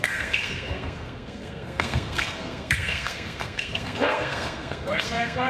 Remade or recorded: remade